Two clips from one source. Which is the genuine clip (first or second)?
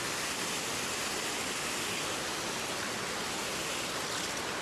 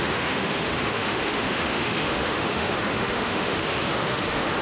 first